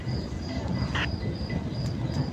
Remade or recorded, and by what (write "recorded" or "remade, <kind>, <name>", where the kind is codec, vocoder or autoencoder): recorded